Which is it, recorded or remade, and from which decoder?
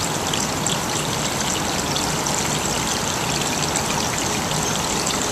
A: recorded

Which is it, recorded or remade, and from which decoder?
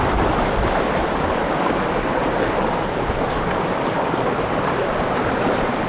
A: recorded